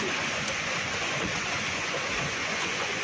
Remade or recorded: remade